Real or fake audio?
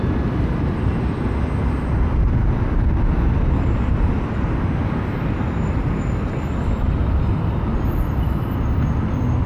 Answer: real